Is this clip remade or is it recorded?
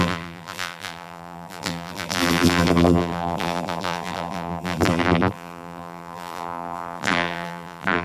remade